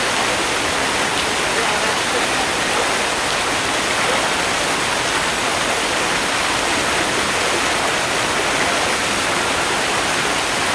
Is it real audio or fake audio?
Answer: real